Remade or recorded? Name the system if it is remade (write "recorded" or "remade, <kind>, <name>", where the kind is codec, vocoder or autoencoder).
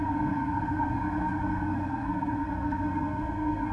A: remade, codec, SNAC